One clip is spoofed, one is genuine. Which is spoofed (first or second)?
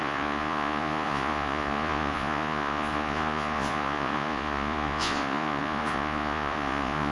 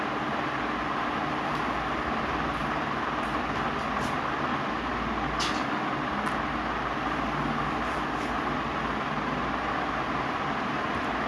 first